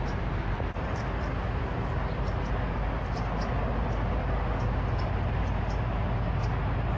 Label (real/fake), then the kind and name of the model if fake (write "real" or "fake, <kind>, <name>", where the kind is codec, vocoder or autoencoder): real